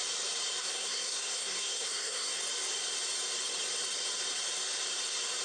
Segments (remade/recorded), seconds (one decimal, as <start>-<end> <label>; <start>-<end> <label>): 0.0-0.6 recorded; 0.6-2.4 remade; 2.4-5.4 recorded